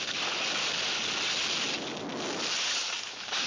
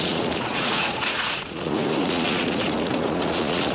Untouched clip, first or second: first